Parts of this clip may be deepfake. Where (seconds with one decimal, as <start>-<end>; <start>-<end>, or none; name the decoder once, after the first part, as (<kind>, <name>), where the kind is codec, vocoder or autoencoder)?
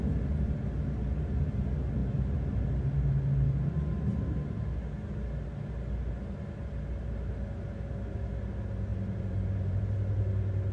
8.9-9.8 (vocoder, BigVGAN v2)